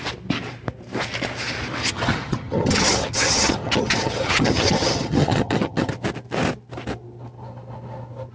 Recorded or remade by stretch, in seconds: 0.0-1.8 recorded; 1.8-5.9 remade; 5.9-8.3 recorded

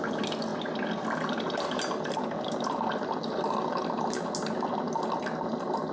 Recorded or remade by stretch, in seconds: 0.0-5.9 recorded

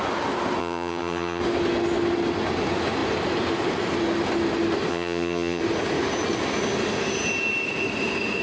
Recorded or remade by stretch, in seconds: 0.0-0.6 recorded; 0.6-1.4 remade; 1.4-4.9 recorded; 4.9-5.6 remade; 5.6-8.4 recorded

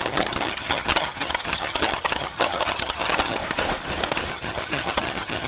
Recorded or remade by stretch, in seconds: 0.0-3.4 remade; 3.4-4.3 recorded; 4.3-5.5 remade